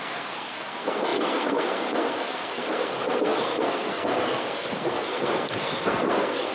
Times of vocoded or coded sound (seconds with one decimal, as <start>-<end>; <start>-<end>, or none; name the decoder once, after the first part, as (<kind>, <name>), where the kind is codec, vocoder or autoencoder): 0.0-6.5 (codec, SNAC)